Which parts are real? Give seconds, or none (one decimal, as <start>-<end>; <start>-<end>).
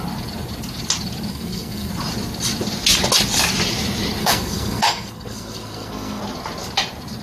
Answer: 0.0-1.3; 1.9-4.2; 6.2-7.2